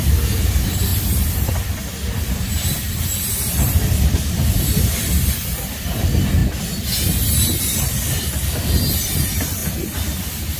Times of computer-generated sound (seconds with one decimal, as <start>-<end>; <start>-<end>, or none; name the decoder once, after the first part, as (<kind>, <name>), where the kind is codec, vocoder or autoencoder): 0.0-6.4 (vocoder, BigVGAN v2); 7.6-9.6